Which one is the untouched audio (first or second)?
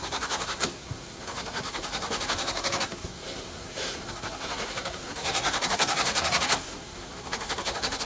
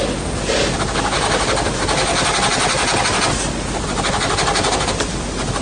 second